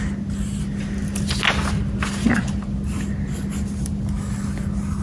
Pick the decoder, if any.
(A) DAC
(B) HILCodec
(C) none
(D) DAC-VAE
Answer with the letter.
C